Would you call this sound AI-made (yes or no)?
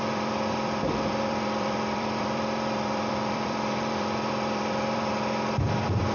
yes